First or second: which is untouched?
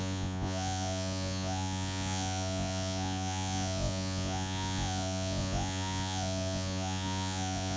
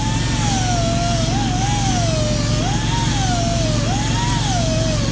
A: second